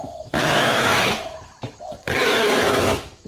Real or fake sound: fake